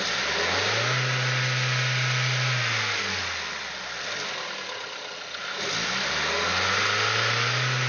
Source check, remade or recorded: recorded